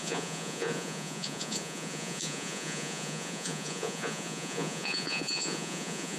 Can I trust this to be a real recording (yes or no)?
no